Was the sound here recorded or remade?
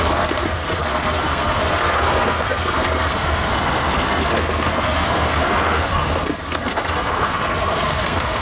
remade